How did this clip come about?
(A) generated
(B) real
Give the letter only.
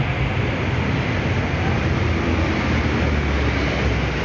B